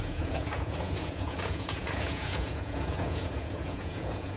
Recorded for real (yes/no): no